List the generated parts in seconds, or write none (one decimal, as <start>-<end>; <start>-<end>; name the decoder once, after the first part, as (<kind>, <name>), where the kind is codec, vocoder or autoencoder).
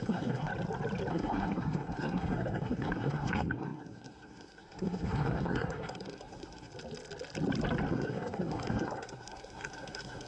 0.0-0.5 (codec, SNAC); 1.1-6.7; 7.9-10.3